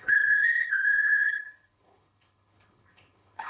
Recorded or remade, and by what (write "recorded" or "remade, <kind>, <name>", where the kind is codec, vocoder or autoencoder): remade, codec, HILCodec